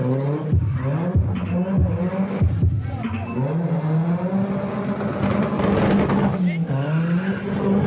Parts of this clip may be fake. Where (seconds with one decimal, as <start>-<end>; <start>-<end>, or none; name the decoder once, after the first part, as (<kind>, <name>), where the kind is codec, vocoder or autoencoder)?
none